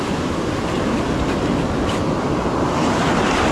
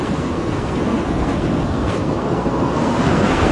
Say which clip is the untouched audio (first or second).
first